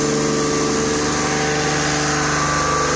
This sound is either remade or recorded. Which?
recorded